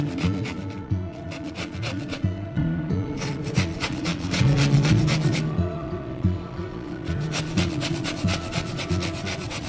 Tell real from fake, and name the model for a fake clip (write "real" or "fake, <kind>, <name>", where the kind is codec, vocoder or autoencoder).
fake, vocoder, Vocos